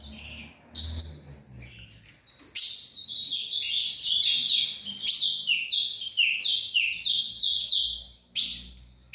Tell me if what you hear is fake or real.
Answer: real